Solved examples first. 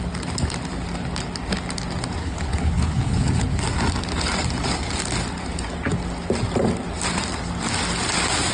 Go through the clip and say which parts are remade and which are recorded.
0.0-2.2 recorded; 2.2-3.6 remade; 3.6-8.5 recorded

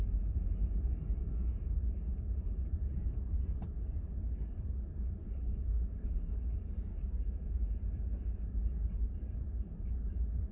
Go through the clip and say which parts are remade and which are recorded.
0.0-5.2 recorded; 5.2-6.4 remade; 6.4-10.5 recorded

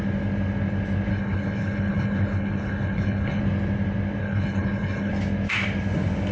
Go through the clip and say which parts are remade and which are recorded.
0.0-1.1 recorded; 1.1-3.4 remade; 3.4-4.2 recorded; 4.2-5.1 remade; 5.1-6.3 recorded

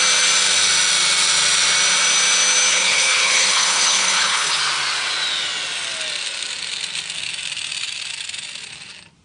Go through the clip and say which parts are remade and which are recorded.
0.0-2.7 recorded; 2.7-4.6 remade; 4.6-9.2 recorded

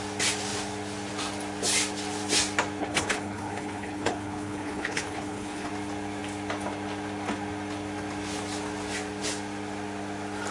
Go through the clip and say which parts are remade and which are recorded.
0.0-2.8 recorded; 2.8-5.7 remade; 5.7-10.5 recorded

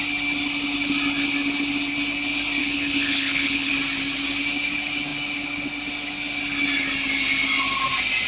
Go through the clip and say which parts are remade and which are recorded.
0.0-2.6 recorded; 2.6-3.7 remade; 3.7-8.3 recorded

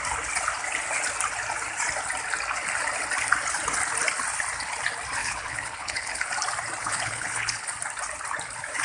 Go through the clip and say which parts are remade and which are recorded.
0.0-5.2 recorded; 5.2-6.3 remade; 6.3-6.8 recorded; 6.8-7.7 remade; 7.7-8.8 recorded

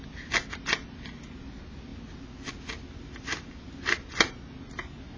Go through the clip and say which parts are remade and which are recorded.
0.0-5.2 recorded